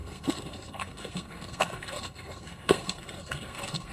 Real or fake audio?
fake